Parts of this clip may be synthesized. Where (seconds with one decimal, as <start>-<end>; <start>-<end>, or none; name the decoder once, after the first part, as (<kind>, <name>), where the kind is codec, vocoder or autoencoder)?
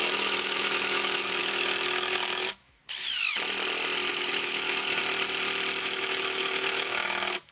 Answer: 0.0-2.8 (autoencoder, DAC-VAE); 4.1-5.0; 5.8-7.5